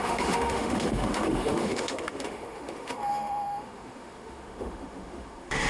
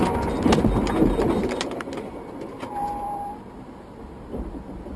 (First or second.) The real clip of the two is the second